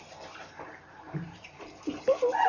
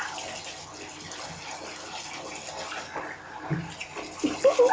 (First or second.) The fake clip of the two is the first